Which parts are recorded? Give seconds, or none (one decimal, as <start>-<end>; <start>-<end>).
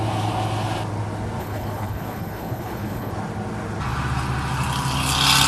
0.0-1.4; 3.1-5.5